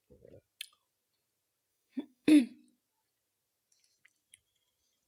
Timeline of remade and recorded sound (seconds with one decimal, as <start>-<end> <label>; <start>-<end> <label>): 0.0-1.7 recorded; 1.7-2.4 remade; 2.4-5.1 recorded